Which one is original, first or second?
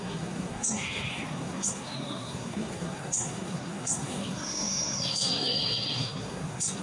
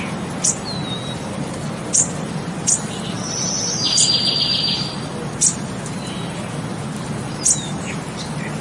second